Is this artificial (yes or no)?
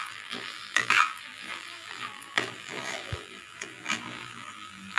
yes